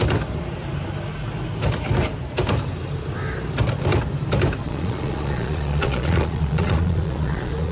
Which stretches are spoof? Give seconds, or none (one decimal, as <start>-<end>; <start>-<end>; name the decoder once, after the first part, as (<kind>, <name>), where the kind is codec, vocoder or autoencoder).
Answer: 4.6-7.7 (vocoder, Vocos)